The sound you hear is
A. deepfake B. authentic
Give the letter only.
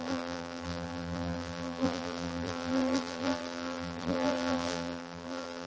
A